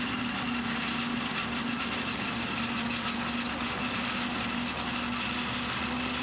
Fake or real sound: real